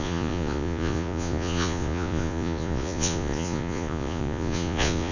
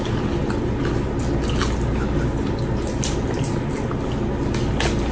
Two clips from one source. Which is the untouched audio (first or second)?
second